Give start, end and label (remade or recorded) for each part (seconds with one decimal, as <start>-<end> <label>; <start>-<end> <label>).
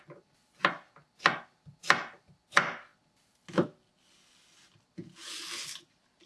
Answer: 0.0-6.3 recorded